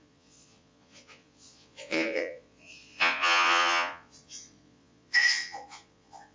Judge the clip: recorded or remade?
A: remade